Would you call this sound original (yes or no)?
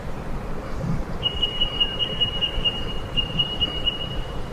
no